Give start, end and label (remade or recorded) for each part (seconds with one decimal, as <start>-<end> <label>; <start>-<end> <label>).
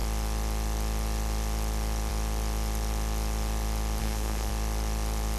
0.0-4.0 recorded; 4.0-4.5 remade; 4.5-5.4 recorded